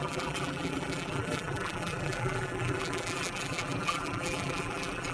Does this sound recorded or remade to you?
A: remade